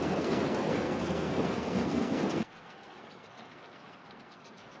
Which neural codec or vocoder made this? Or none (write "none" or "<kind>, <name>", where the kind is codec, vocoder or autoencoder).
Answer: codec, SNAC